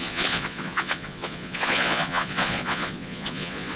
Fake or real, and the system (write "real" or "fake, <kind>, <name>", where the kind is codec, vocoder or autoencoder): fake, vocoder, Vocos